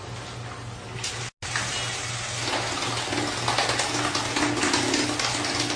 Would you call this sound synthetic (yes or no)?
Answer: no